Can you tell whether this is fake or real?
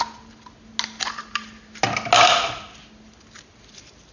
real